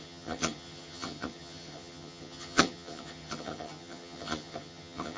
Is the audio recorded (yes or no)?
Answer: no